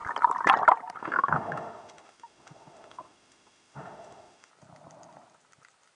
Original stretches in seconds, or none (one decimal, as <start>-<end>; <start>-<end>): 0.0-1.0; 4.5-5.9